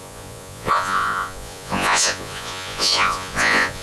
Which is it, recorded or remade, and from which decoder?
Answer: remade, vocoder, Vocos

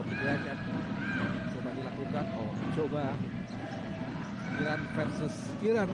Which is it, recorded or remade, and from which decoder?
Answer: recorded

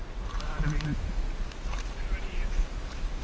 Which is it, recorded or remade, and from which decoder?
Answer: remade, vocoder, BigVGAN v2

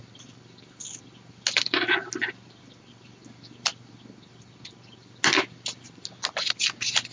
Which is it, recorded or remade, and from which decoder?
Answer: recorded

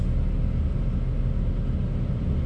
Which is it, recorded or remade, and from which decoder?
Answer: recorded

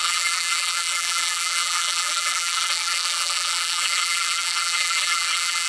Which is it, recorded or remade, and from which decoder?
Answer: remade, vocoder, BigVGAN v2